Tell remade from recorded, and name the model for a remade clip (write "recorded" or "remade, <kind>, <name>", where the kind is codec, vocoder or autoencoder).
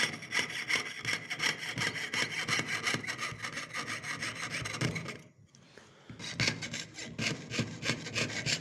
recorded